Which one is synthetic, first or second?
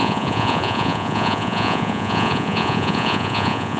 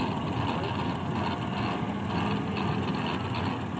first